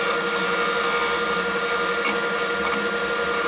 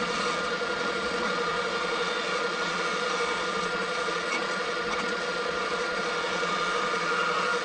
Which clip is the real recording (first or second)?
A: first